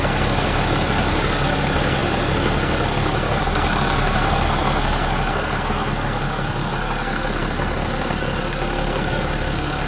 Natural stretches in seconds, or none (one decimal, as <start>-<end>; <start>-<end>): none